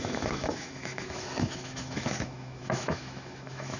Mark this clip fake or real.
fake